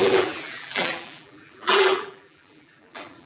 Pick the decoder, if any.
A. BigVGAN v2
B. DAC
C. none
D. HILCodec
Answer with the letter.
A